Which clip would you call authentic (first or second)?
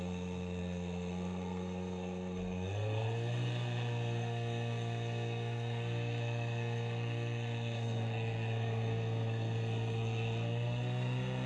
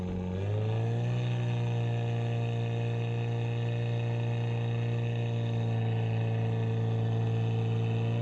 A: second